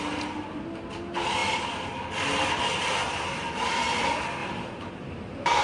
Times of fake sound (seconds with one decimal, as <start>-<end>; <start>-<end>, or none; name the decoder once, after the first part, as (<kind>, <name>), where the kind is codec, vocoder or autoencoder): 4.4-5.6 (vocoder, BigVGAN v2)